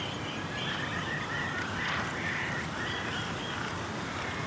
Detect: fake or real real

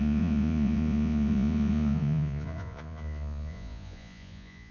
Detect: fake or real fake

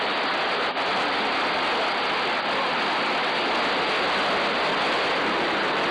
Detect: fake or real real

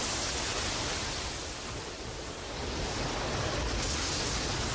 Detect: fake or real real